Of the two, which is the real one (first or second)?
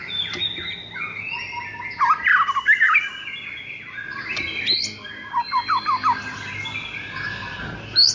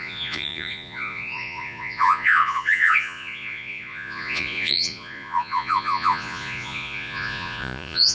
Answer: first